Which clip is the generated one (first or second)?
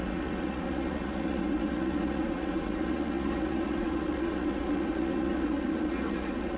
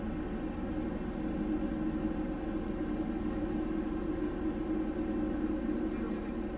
first